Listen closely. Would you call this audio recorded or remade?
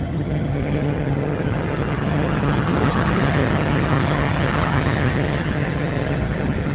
remade